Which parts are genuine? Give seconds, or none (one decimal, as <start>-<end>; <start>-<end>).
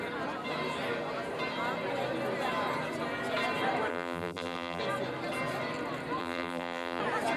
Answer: 0.0-3.9; 4.8-6.2; 7.0-7.4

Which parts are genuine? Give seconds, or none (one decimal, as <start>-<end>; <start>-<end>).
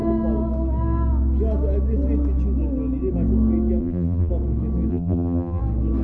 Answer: 0.0-3.8; 4.3-4.9; 5.6-6.0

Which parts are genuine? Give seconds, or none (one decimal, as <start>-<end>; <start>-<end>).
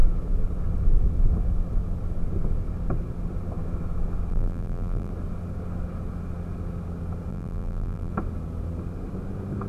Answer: 0.0-4.3; 5.1-7.3; 8.1-9.7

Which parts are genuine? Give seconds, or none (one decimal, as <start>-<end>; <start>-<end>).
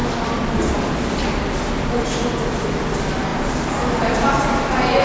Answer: 0.0-5.0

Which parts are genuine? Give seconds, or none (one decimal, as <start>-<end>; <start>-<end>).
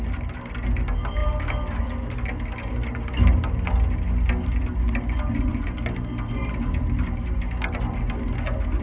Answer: 0.0-8.8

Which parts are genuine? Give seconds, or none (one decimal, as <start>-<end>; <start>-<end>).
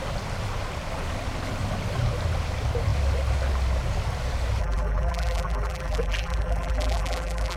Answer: 0.0-4.6